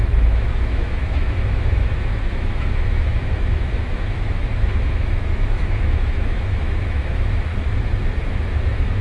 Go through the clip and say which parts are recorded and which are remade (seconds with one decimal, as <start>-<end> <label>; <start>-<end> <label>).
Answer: 0.0-7.5 remade; 7.5-8.2 recorded; 8.2-9.0 remade